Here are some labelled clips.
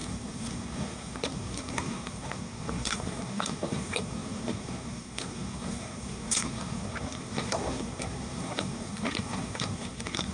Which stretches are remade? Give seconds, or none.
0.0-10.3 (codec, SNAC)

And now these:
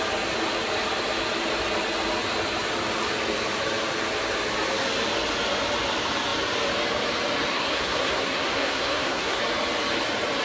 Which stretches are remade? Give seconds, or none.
7.5-9.4 (codec, SNAC)

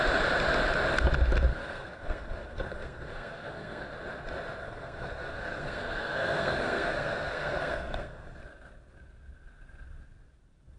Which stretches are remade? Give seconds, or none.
1.5-3.9 (codec, SNAC); 4.6-8.4

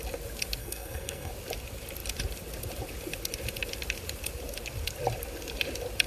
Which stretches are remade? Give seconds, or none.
0.6-1.3 (codec, SNAC)